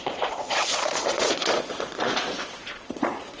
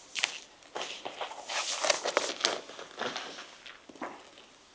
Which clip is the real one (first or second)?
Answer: second